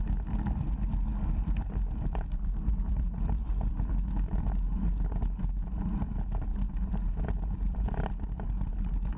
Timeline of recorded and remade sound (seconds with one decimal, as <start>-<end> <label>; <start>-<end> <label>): 0.0-1.1 recorded; 1.1-4.1 remade; 4.1-6.5 recorded; 6.5-8.4 remade; 8.4-9.2 recorded